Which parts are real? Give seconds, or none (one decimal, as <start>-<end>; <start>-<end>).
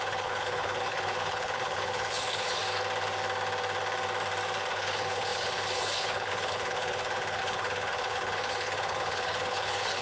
2.6-4.7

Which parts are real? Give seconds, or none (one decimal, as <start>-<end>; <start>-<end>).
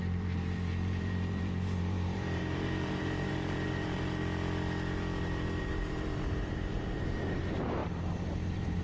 4.2-5.6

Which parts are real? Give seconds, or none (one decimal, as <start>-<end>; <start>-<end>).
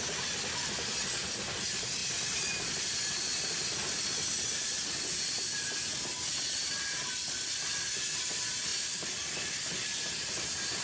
0.0-10.8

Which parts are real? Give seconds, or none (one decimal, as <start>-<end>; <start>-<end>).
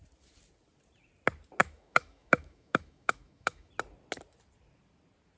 0.0-1.6; 3.7-5.4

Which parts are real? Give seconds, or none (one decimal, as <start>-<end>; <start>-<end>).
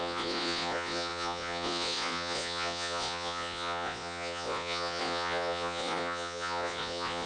none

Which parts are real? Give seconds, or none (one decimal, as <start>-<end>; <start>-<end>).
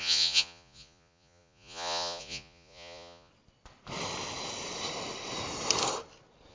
3.3-6.5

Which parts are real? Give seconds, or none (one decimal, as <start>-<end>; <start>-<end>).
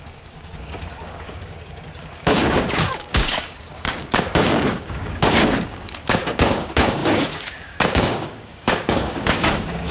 none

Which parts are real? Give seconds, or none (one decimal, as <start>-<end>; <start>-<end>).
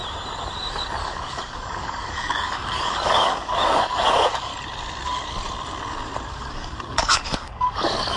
0.0-1.0; 4.5-6.3